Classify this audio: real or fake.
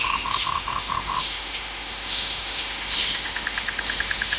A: fake